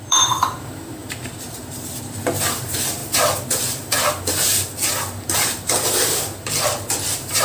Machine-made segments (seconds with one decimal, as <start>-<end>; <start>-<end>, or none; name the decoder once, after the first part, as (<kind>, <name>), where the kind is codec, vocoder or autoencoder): 0.0-3.0 (vocoder, BigVGAN v2); 3.6-7.4